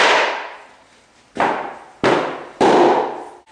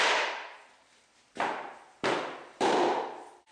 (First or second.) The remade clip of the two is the second